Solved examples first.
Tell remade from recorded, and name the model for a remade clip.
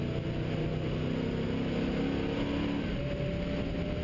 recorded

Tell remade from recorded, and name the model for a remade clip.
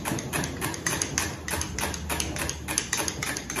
recorded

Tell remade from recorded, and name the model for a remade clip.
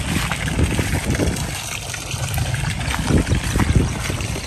recorded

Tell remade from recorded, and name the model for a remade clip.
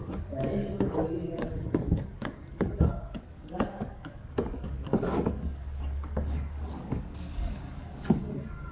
remade, codec, DAC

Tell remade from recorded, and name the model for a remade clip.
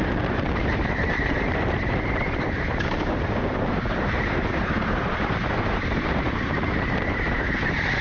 remade, vocoder, BigVGAN v2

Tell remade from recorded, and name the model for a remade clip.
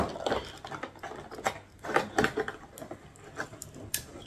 recorded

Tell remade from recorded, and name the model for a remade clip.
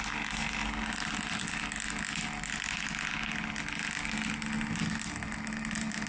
recorded